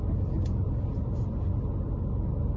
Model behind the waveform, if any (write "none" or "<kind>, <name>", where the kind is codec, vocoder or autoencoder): none